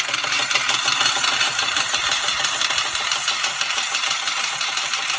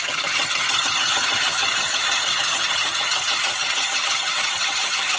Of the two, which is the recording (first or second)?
first